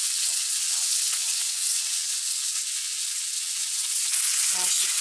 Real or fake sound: fake